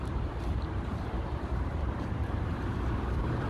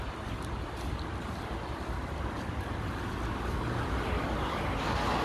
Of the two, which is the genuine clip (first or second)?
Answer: second